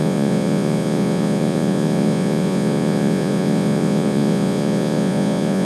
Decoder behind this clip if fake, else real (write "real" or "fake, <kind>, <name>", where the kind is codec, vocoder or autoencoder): fake, vocoder, Vocos